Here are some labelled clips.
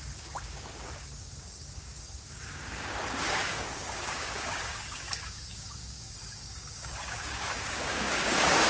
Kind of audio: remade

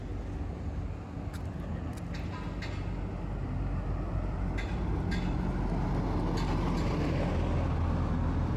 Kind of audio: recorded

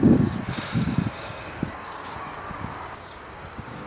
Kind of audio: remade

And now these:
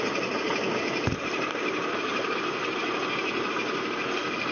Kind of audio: recorded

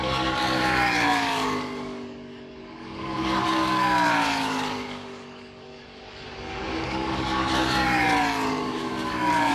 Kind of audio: remade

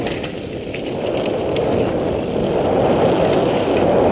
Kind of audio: recorded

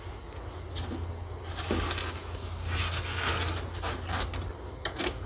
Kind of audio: recorded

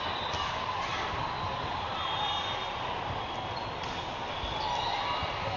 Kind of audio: recorded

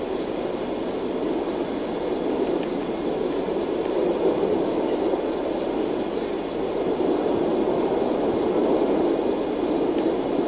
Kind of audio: recorded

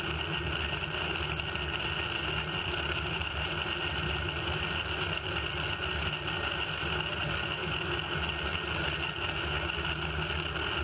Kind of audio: recorded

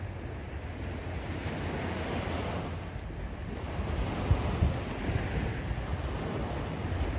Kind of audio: recorded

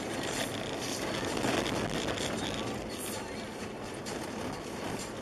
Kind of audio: recorded